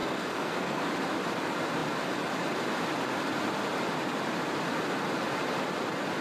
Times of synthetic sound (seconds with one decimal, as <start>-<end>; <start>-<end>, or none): 0.0-0.9